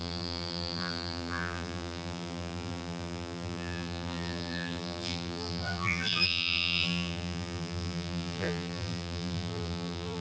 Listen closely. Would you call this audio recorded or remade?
remade